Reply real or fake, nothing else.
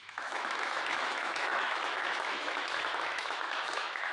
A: fake